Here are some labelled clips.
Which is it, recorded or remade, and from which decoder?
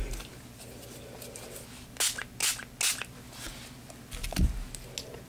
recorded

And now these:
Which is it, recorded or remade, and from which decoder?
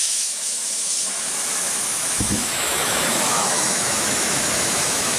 remade, autoencoder, DAC-VAE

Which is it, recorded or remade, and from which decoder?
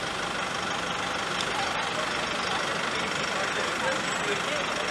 recorded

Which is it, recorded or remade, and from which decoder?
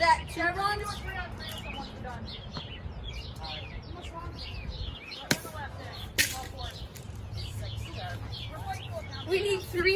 remade, vocoder, BigVGAN v2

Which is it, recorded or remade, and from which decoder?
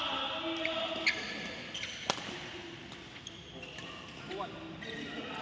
recorded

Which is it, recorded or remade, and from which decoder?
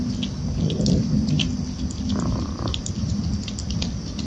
recorded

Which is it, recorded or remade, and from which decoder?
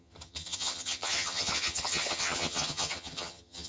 remade, vocoder, HiFi-GAN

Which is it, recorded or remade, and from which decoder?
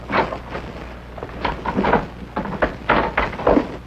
recorded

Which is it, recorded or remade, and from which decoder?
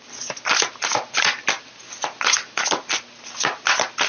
recorded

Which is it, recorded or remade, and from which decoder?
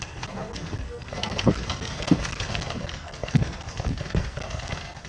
remade, codec, SNAC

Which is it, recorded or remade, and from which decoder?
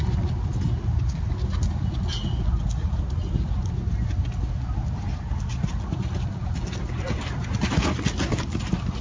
recorded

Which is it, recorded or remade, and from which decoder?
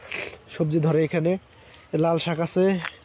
recorded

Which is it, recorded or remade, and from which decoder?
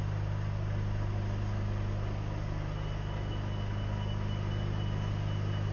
recorded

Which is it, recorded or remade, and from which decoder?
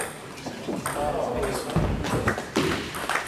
remade, vocoder, BigVGAN v2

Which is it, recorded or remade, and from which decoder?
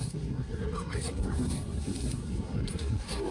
remade, codec, SNAC